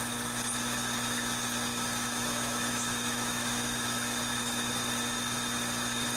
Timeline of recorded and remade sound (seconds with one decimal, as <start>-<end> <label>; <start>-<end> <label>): 0.0-1.7 recorded; 1.7-4.7 remade; 4.7-6.2 recorded

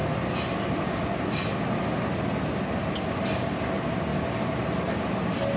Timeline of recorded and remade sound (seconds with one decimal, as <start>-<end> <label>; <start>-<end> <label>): 0.0-5.6 recorded

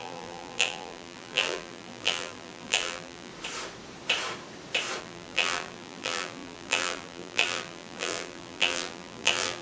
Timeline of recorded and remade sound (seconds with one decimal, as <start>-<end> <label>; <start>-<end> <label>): 0.0-3.3 remade; 3.3-5.0 recorded; 5.0-9.6 remade

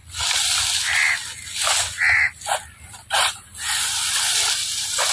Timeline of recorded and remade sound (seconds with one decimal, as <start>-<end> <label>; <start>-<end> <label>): 0.0-3.1 recorded; 3.1-3.5 remade; 3.5-4.2 recorded; 4.2-5.1 remade